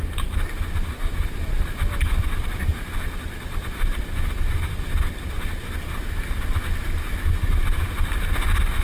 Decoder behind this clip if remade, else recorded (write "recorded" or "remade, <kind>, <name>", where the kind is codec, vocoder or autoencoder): recorded